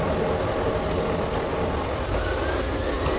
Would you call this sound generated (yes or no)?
no